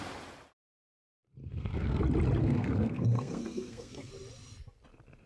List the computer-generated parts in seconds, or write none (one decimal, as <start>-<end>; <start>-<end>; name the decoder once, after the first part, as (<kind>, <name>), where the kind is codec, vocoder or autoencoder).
1.4-2.0 (codec, SNAC); 2.4-4.1